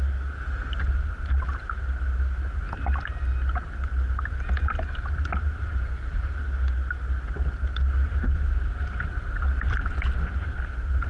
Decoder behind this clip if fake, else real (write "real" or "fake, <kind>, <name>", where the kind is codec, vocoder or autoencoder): real